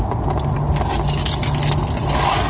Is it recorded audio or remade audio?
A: recorded